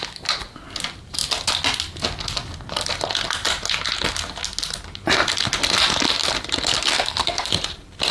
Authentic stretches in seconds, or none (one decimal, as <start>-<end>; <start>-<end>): 0.0-6.9; 7.5-8.1